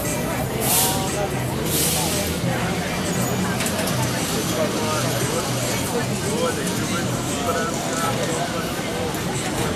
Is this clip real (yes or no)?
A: yes